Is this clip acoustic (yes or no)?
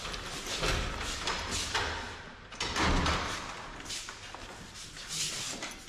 yes